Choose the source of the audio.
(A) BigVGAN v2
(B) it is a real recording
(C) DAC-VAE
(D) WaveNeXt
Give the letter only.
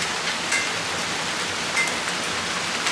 B